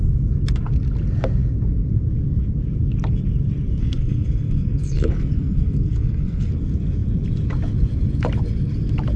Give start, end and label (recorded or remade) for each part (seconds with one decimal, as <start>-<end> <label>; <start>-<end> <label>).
0.0-3.8 recorded; 3.8-6.5 remade; 6.5-9.2 recorded